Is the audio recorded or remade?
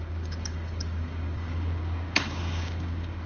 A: remade